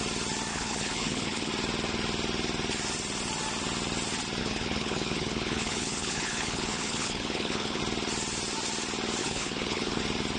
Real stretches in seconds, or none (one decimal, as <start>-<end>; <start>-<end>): 0.0-0.5; 1.5-4.4; 7.8-9.2; 10.0-10.4